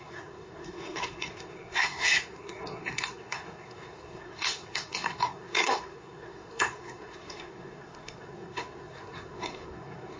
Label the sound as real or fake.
fake